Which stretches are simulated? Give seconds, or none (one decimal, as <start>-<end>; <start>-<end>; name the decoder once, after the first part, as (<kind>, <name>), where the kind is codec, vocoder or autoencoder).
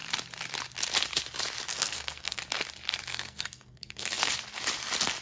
1.7-2.4 (codec, SNAC); 3.1-4.3